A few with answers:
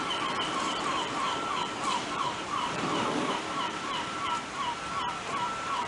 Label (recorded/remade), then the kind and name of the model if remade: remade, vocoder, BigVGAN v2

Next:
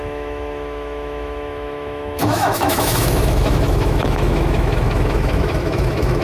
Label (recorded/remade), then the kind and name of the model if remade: remade, autoencoder, DAC-VAE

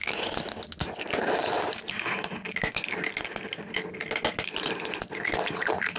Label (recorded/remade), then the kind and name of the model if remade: recorded